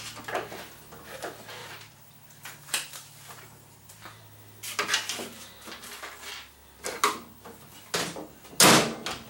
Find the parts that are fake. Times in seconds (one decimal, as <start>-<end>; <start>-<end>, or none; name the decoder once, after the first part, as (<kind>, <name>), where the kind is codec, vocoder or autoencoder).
1.6-4.2 (vocoder, BigVGAN v2)